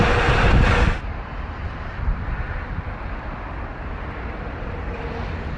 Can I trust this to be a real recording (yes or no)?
yes